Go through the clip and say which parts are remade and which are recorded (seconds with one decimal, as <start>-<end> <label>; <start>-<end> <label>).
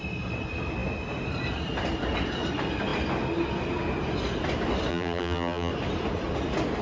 0.0-4.9 recorded; 4.9-5.7 remade; 5.7-6.8 recorded